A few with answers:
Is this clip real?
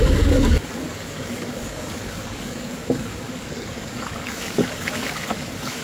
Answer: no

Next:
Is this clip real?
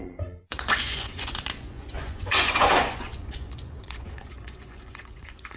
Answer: no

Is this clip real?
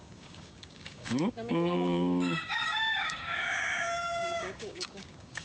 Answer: no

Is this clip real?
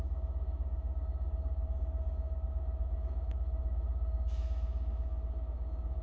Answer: no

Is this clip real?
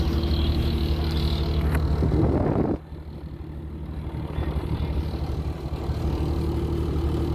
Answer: yes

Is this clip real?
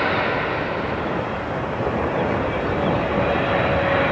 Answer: yes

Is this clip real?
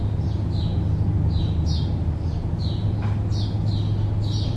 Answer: yes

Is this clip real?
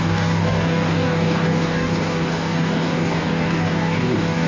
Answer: no